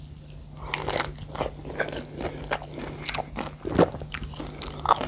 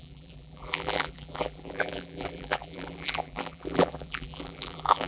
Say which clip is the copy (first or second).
second